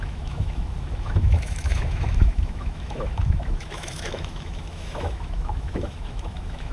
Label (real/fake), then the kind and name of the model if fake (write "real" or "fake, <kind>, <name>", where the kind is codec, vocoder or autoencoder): fake, autoencoder, DAC-VAE